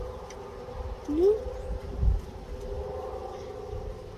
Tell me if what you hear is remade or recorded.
recorded